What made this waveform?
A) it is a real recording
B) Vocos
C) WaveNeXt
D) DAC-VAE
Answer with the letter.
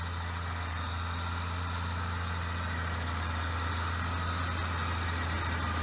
A